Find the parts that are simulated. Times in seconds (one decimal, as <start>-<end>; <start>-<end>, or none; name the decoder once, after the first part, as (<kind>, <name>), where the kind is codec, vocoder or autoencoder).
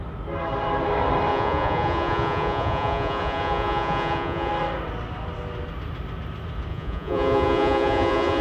1.3-4.5 (vocoder, Vocos); 6.7-8.4